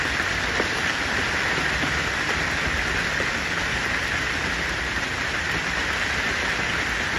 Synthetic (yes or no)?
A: no